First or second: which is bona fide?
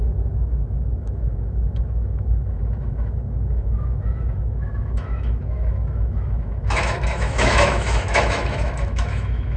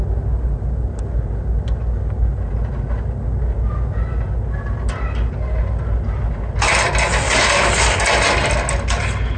second